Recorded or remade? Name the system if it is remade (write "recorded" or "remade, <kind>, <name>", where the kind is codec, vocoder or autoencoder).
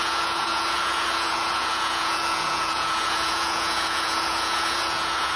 remade, vocoder, Vocos